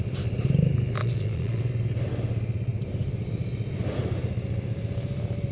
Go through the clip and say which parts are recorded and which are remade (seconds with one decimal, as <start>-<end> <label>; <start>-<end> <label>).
0.0-1.0 recorded; 1.0-1.6 remade; 1.6-5.5 recorded